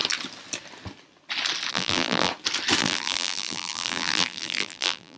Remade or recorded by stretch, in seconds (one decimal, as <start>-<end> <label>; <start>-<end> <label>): 0.0-1.7 recorded; 1.7-2.3 remade; 2.3-2.8 recorded; 2.8-5.2 remade